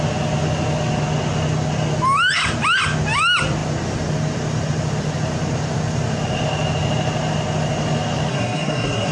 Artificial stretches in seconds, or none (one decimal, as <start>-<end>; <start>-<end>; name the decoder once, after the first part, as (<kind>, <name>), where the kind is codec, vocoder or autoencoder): 8.3-9.1 (codec, SNAC)